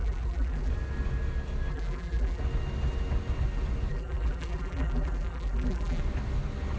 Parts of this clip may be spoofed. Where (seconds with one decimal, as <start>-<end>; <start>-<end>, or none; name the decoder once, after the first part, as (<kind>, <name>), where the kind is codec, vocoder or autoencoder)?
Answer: 0.0-0.7 (vocoder, BigVGAN v2); 1.7-2.4; 3.9-6.0